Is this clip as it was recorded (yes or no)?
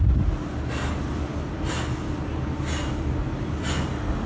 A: yes